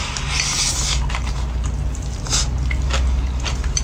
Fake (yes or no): no